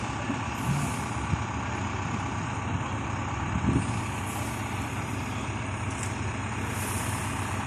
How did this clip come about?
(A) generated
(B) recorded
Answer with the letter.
B